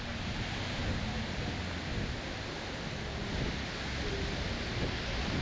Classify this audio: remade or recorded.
recorded